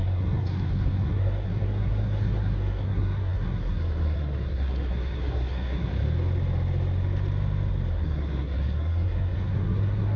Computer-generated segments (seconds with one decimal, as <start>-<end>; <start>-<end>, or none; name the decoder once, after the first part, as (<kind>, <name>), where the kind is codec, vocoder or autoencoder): 0.0-5.9 (codec, SNAC); 7.9-10.2